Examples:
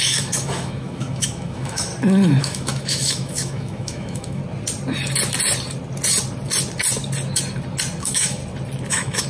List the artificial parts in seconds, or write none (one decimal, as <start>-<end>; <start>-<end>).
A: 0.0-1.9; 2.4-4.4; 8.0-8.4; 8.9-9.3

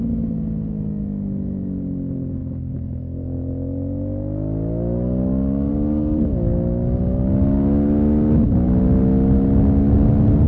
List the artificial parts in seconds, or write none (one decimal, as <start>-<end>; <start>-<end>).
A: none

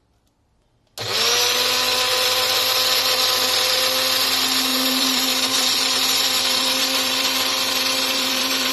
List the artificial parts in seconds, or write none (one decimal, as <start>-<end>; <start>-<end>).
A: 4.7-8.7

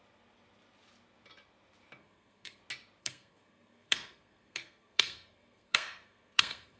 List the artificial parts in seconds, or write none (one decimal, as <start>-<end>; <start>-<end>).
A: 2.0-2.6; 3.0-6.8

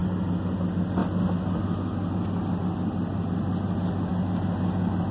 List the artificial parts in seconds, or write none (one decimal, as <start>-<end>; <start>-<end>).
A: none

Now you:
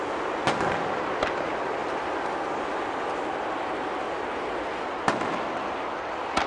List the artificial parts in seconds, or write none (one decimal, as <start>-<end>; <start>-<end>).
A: none